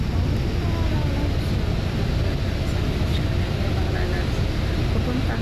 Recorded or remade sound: recorded